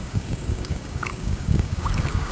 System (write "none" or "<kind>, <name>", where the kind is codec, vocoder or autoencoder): codec, DAC